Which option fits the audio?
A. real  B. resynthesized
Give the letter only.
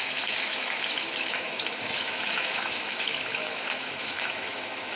B